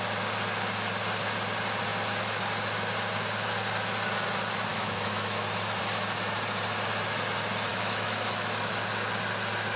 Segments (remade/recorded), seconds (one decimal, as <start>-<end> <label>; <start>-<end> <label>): 0.0-4.7 recorded; 4.7-5.8 remade; 5.8-7.7 recorded; 7.7-8.7 remade; 8.7-9.8 recorded